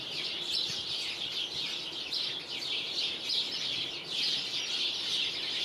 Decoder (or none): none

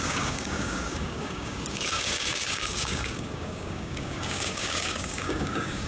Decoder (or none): codec, DAC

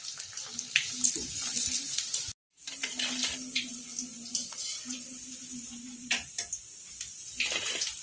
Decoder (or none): none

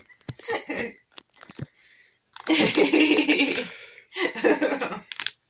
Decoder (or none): none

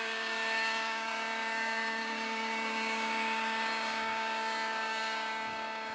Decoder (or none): codec, DAC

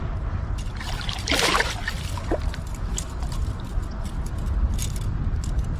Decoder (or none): none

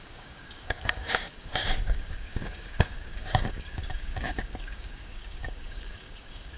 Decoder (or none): codec, DAC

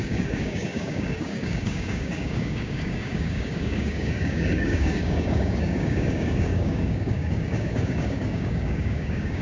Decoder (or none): codec, DAC